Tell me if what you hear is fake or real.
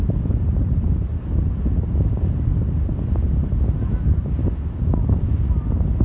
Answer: real